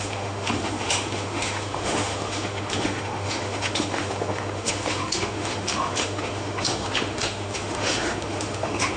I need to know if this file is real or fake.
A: fake